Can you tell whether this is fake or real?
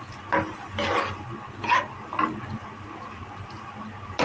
real